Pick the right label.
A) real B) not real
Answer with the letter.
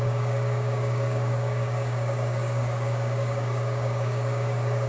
B